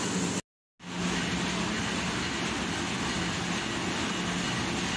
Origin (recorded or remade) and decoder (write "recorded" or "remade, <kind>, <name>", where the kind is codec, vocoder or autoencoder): recorded